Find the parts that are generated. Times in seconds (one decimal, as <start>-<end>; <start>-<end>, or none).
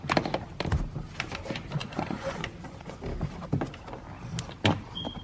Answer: 1.8-3.0